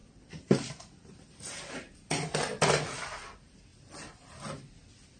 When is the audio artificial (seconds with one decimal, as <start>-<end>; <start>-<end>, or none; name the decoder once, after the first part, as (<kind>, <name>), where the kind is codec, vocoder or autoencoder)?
none